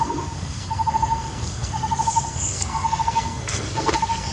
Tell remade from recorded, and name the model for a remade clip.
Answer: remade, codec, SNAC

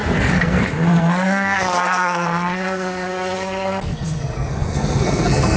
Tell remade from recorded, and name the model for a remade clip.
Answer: remade, codec, SNAC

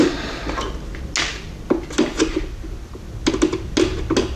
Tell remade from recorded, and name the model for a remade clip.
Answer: recorded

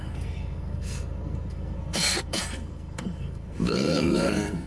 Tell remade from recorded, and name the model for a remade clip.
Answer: remade, codec, SNAC